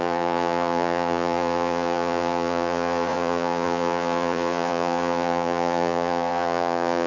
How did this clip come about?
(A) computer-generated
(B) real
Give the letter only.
A